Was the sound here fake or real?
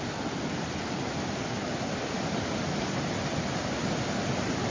real